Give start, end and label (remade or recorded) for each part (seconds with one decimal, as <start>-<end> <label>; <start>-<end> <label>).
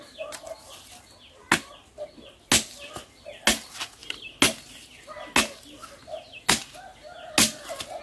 0.0-8.0 recorded